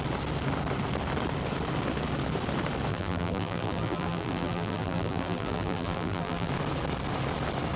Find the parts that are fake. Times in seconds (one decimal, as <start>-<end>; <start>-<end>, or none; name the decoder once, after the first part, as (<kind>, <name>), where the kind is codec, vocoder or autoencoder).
2.9-6.5 (vocoder, BigVGAN v2)